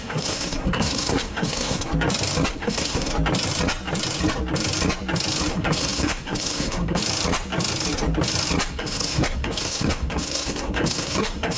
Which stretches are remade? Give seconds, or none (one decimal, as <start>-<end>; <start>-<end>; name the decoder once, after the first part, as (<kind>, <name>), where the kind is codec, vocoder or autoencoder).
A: 0.0-1.9 (codec, SNAC); 2.5-3.1; 5.5-7.0; 8.7-11.6